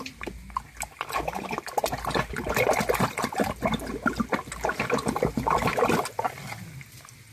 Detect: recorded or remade recorded